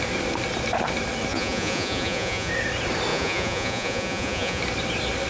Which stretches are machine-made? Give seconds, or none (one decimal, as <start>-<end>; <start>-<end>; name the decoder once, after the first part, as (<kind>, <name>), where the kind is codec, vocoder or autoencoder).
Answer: 1.3-2.5 (vocoder, Vocos); 3.1-4.6